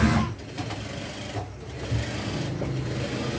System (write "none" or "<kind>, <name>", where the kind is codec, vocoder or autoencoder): none